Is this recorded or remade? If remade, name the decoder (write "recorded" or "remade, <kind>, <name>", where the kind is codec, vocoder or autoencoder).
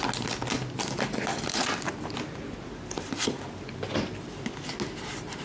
recorded